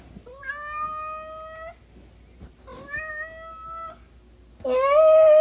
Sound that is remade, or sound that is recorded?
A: recorded